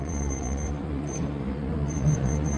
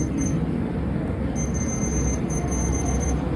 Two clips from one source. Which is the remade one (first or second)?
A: first